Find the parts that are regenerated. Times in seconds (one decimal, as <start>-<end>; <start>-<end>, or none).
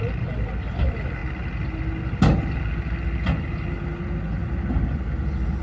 none